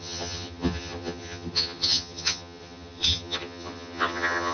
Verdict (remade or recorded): remade